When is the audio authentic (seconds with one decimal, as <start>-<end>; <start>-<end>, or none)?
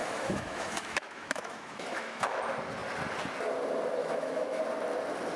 2.4-4.0; 4.6-5.4